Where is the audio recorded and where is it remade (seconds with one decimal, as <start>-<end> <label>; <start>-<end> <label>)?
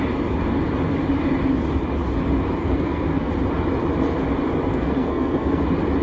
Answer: 0.0-2.6 recorded; 2.6-3.3 remade; 3.3-4.7 recorded; 4.7-5.6 remade; 5.6-6.0 recorded